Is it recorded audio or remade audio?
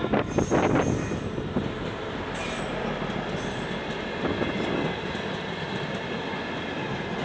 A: recorded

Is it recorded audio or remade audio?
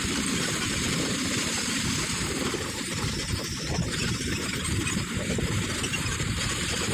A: remade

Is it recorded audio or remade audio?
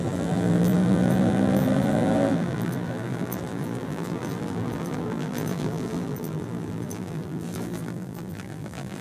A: remade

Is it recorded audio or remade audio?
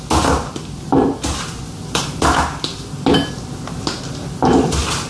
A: recorded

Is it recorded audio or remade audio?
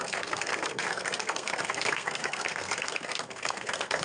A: remade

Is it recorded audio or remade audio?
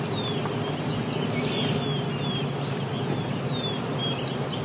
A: recorded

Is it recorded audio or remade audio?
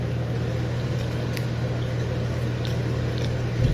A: recorded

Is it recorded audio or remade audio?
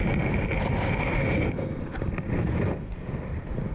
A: recorded